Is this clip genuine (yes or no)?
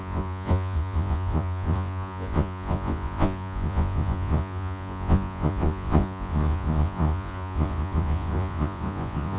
no